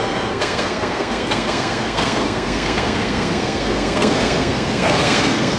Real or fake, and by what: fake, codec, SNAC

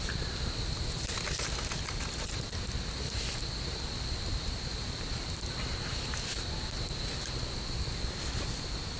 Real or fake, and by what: real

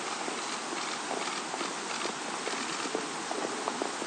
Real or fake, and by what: real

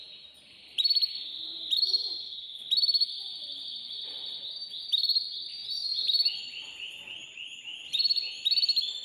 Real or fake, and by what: real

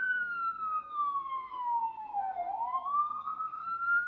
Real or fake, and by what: fake, codec, SNAC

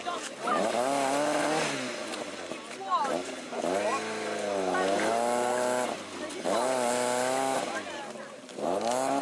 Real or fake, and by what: real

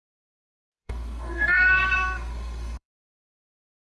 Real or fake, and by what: fake, codec, SNAC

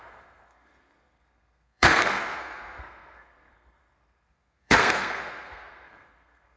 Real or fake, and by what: fake, codec, SNAC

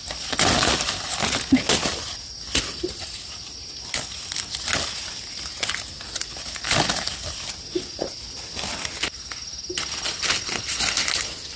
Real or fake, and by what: real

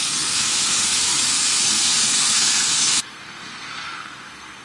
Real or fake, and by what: fake, codec, SNAC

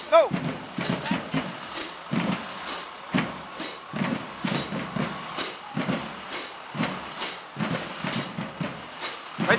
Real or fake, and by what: real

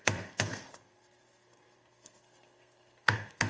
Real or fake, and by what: fake, codec, SNAC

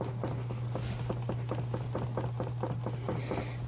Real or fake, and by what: real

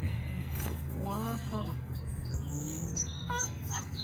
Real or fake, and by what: fake, codec, SNAC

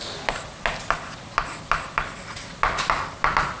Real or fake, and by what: real